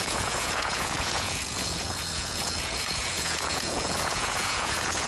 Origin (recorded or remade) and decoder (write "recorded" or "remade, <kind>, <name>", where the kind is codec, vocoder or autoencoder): remade, vocoder, Vocos